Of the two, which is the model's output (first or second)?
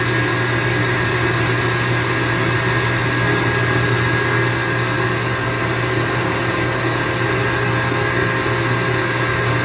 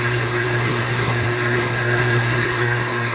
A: second